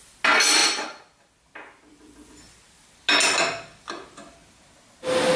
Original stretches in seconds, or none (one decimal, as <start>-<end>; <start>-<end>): 0.0-5.4